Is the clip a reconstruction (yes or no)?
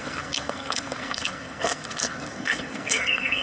yes